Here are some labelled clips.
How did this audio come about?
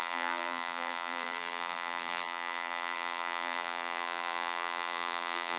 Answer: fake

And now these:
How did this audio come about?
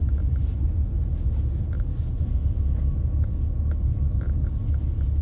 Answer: real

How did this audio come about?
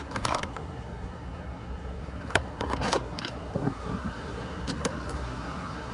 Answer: fake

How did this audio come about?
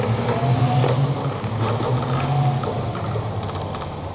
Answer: real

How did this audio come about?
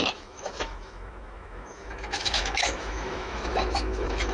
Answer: fake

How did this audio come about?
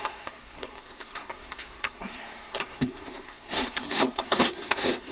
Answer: fake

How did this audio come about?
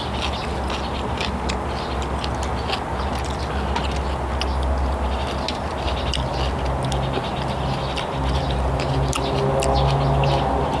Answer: real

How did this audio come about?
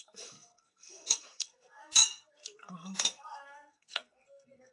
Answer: fake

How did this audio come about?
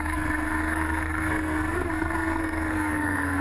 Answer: fake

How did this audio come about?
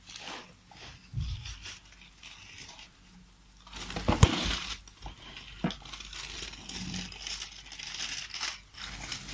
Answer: real